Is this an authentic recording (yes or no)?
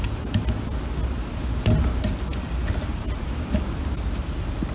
yes